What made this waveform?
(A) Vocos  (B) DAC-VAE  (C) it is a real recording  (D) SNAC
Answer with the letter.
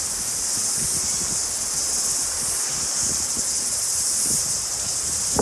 C